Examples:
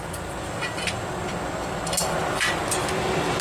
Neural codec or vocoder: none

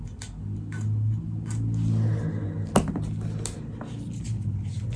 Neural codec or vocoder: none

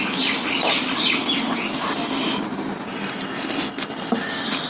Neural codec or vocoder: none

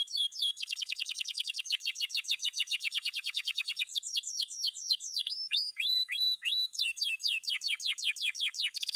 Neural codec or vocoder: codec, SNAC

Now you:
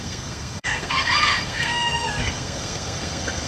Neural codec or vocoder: codec, SNAC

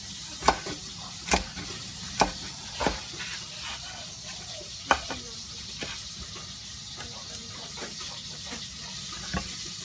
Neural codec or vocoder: none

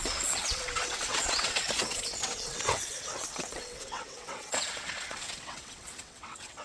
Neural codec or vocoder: vocoder, WaveNeXt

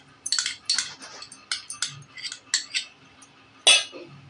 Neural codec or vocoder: none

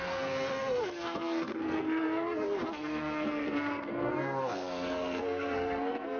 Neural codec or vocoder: codec, SNAC